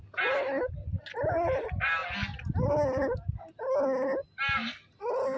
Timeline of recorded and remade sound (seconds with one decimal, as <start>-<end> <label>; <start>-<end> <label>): 0.0-5.4 recorded